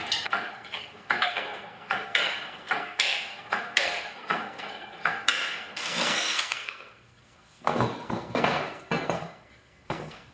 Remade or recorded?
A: remade